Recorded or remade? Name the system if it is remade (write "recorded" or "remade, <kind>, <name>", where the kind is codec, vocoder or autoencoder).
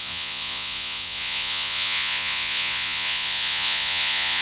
remade, vocoder, Vocos